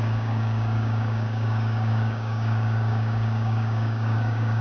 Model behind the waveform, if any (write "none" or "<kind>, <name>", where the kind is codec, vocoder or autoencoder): codec, DAC